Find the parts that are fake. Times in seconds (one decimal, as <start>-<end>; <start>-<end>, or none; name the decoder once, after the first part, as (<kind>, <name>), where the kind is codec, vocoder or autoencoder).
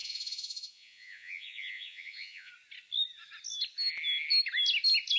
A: 0.0-2.5 (vocoder, Vocos)